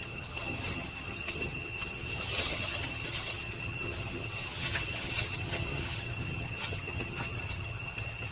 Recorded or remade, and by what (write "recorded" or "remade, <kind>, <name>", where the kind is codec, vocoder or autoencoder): remade, vocoder, HiFi-GAN